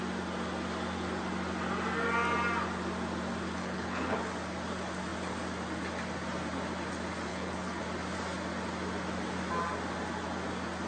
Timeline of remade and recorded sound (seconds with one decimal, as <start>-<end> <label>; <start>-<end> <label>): 0.0-3.6 recorded; 3.6-4.2 remade; 4.2-7.3 recorded; 7.3-7.8 remade; 7.8-10.9 recorded